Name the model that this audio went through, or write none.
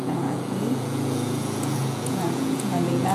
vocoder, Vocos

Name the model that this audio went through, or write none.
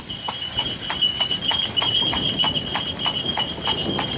none